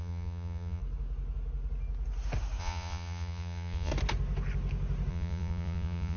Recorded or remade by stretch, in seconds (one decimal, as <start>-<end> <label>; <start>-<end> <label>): 0.0-0.8 remade; 0.8-2.6 recorded; 2.6-3.9 remade; 3.9-5.1 recorded; 5.1-6.2 remade